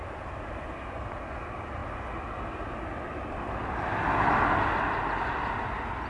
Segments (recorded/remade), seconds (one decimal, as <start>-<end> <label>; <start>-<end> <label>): 0.0-6.1 recorded

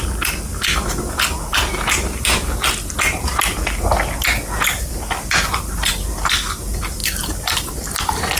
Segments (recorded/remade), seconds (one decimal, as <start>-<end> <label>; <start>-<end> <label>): 0.0-7.0 recorded; 7.0-8.0 remade; 8.0-8.4 recorded

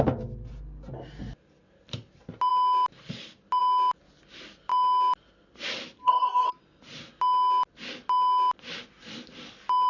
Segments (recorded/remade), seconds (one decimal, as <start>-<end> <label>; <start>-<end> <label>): 0.0-6.0 recorded; 6.0-6.6 remade; 6.6-9.9 recorded

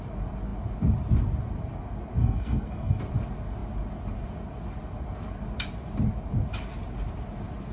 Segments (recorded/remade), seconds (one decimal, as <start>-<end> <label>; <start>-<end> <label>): 0.0-2.2 recorded; 2.2-3.0 remade; 3.0-7.7 recorded

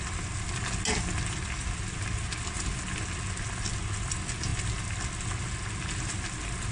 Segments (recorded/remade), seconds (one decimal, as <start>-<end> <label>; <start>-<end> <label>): 0.0-6.7 recorded

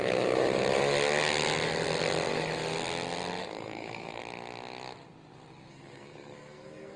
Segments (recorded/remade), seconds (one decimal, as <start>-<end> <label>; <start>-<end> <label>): 0.0-3.4 recorded; 3.4-4.2 remade; 4.2-5.7 recorded; 5.7-7.0 remade

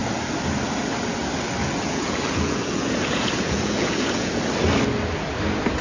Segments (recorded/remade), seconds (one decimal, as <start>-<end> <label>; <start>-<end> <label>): 0.0-1.6 recorded; 1.6-4.4 remade; 4.4-5.8 recorded

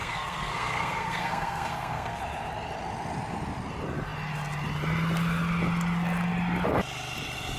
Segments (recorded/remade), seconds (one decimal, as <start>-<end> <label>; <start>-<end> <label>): 0.0-2.2 remade; 2.2-7.6 recorded